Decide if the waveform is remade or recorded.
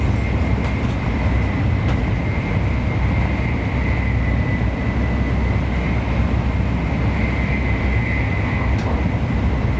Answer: recorded